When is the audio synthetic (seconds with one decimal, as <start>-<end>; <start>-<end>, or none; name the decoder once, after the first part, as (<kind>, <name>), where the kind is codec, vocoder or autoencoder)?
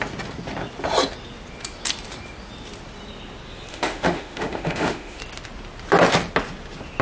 3.7-5.2 (autoencoder, DAC-VAE)